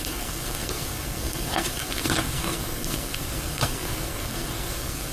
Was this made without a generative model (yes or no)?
no